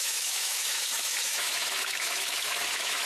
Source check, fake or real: fake